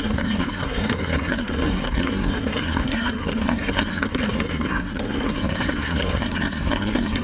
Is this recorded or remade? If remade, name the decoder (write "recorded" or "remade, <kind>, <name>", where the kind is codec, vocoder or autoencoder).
remade, codec, SNAC